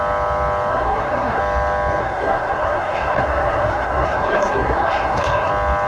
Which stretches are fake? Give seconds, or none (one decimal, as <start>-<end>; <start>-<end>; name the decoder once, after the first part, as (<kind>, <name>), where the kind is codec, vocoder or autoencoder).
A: 0.7-1.4 (codec, SNAC); 2.0-5.5